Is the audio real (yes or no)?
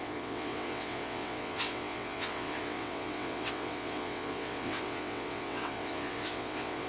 no